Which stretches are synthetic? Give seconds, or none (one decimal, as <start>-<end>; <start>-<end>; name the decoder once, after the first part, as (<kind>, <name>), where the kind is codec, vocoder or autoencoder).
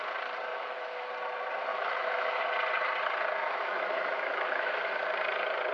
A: 0.5-1.1 (autoencoder, DAC-VAE); 1.7-2.4; 3.4-4.8